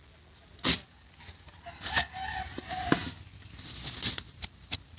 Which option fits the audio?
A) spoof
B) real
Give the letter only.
B